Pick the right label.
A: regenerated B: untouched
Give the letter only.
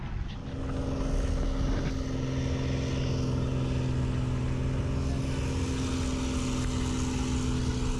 B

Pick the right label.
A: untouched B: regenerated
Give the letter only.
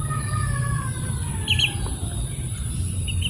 A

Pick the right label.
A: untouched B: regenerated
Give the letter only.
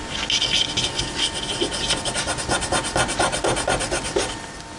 A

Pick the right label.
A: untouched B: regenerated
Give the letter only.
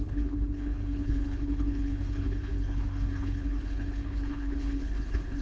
B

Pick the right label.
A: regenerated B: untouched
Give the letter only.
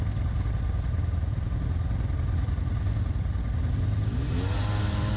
B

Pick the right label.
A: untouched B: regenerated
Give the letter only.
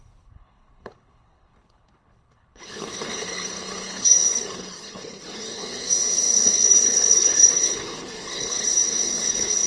B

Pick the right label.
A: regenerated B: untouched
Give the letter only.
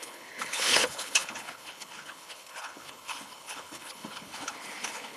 A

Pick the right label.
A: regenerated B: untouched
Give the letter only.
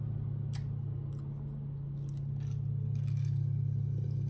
B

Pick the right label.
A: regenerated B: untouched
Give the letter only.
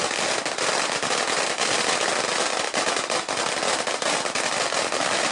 B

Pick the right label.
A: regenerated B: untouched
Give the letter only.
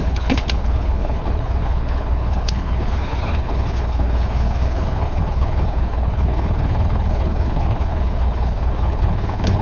A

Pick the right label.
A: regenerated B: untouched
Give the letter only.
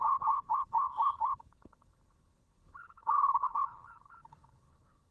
A